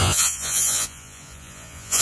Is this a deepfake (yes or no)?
yes